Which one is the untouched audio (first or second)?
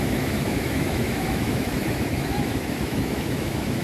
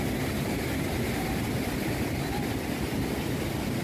second